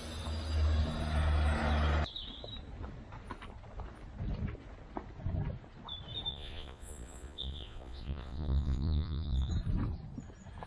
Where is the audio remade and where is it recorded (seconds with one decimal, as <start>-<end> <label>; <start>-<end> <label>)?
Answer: 0.0-6.3 recorded; 6.3-9.5 remade; 9.5-10.7 recorded

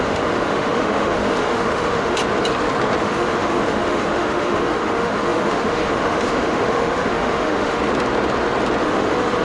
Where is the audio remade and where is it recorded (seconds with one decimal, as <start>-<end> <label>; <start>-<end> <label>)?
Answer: 0.0-2.2 remade; 2.2-3.0 recorded; 3.0-7.8 remade; 7.8-8.8 recorded; 8.8-9.4 remade

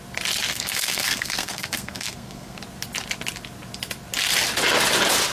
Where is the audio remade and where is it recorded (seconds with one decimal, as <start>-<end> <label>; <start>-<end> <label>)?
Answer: 0.0-0.5 recorded; 0.5-2.6 remade; 2.6-5.3 recorded